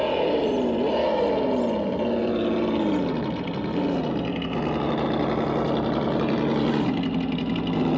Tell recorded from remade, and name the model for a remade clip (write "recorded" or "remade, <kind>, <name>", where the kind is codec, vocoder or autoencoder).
recorded